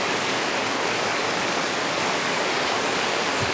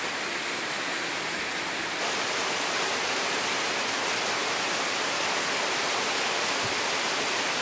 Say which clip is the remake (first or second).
first